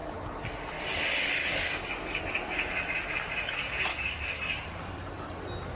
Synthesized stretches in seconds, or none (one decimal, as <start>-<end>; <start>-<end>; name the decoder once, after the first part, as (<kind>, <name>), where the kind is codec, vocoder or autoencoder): 1.4-2.2 (codec, DAC); 3.9-4.4